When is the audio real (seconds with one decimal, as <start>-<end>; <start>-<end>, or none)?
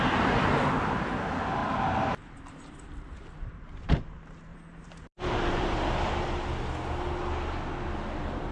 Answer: 0.0-1.6; 4.0-4.5; 6.1-8.5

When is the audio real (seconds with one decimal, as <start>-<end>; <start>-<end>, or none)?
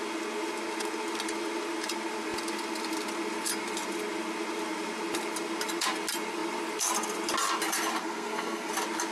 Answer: 0.0-8.0; 8.7-9.1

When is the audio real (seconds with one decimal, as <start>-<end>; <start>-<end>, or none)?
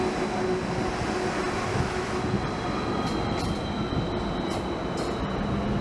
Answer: 0.0-1.7; 2.2-5.8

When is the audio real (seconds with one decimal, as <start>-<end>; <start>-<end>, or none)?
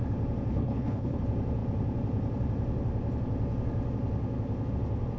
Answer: 0.0-0.5; 1.2-5.2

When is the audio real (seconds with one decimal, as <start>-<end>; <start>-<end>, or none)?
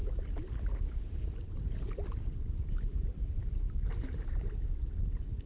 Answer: 0.0-5.5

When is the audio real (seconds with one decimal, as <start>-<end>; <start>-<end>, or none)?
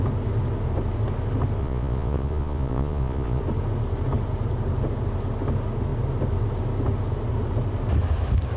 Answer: 0.0-1.6; 3.4-8.6